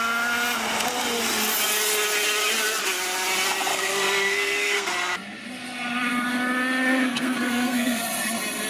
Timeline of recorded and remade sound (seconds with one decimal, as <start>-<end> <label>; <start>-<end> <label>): 0.0-3.7 recorded; 3.7-4.9 remade; 4.9-6.9 recorded; 6.9-8.0 remade; 8.0-8.7 recorded

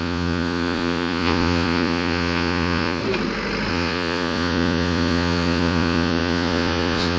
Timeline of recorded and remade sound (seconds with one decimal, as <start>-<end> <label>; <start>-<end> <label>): 0.0-3.0 remade; 3.0-3.7 recorded; 3.7-7.2 remade

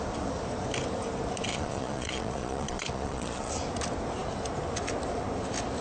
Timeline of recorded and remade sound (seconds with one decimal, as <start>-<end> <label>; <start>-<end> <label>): 0.0-1.5 recorded; 1.5-3.5 remade; 3.5-5.8 recorded

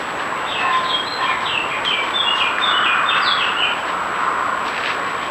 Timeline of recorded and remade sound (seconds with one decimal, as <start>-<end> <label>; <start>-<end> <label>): 0.0-5.3 recorded

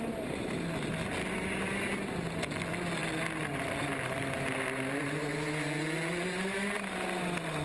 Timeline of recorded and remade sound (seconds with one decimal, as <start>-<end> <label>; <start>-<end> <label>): 0.0-7.6 recorded